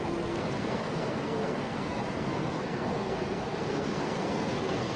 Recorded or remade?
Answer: remade